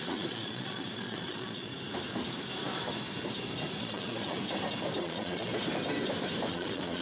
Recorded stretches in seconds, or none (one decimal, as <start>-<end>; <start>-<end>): 1.7-3.8; 4.4-5.0; 5.5-6.5